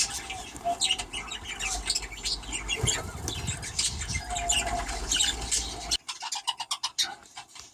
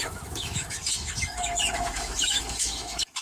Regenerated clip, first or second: second